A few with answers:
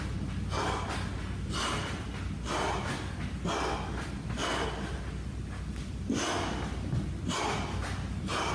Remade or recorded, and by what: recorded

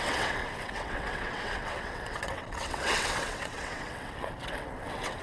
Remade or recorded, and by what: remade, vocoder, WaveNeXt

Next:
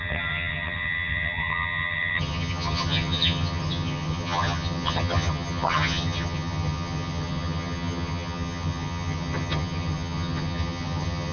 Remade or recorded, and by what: remade, vocoder, HiFi-GAN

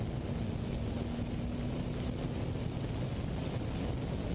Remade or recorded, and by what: recorded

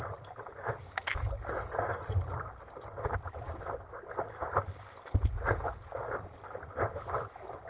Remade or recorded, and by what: recorded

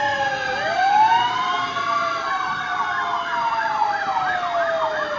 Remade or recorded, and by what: recorded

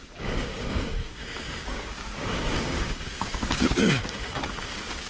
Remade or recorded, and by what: remade, codec, DAC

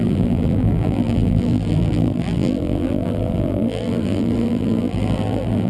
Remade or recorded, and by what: remade, vocoder, BigVGAN v2